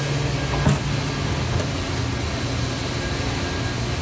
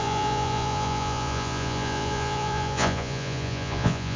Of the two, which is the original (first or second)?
first